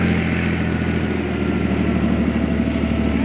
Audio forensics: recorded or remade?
recorded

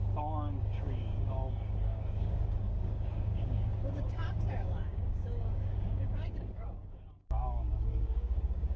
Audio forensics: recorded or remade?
remade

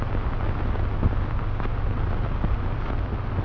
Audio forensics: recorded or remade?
recorded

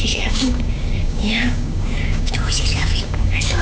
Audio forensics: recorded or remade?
remade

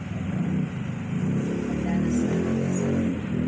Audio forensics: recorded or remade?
recorded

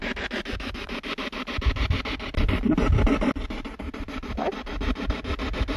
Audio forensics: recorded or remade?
recorded